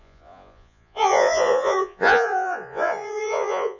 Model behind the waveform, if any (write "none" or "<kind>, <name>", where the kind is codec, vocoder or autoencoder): vocoder, Vocos